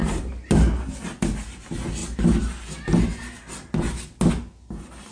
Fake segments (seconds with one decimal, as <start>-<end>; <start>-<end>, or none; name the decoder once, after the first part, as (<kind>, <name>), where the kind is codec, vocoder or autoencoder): none